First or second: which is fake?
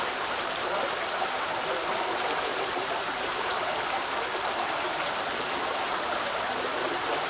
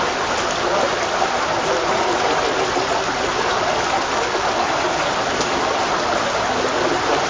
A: first